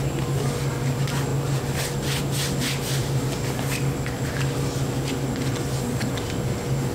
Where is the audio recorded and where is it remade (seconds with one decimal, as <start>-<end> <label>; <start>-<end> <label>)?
0.0-6.9 recorded